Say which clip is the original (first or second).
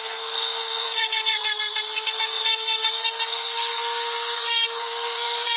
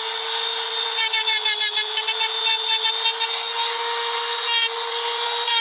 second